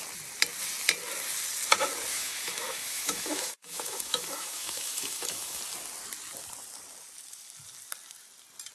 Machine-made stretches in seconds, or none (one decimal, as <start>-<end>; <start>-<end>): 2.1-5.6

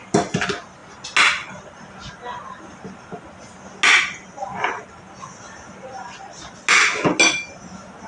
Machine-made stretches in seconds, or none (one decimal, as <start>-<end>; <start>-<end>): none

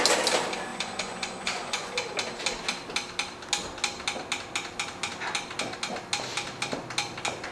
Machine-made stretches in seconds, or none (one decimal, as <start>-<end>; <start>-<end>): 0.7-1.9

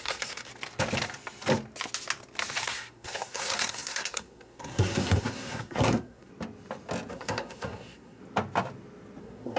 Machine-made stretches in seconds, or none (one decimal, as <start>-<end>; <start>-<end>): 0.0-0.5; 2.6-6.3; 7.1-8.2; 9.2-9.6

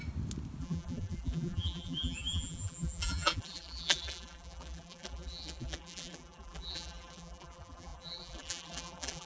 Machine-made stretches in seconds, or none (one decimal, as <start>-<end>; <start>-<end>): 0.6-9.3